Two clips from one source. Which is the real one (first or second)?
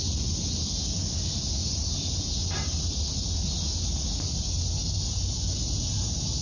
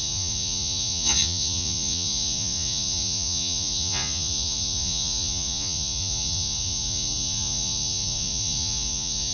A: first